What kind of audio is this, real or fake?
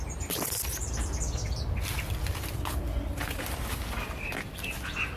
real